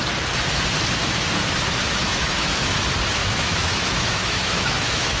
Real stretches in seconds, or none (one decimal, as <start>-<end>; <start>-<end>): 0.0-2.0; 2.8-3.2